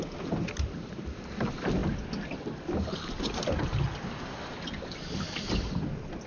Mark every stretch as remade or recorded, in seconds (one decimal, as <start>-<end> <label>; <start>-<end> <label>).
0.0-6.3 recorded